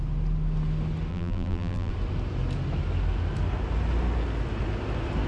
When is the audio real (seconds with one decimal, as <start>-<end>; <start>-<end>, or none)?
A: 0.0-1.1; 1.9-5.3